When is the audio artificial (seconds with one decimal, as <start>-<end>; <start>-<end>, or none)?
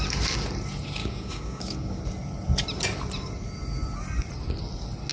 1.0-2.0